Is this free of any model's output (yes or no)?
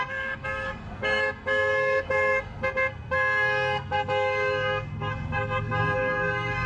no